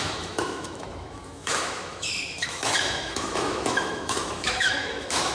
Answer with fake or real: fake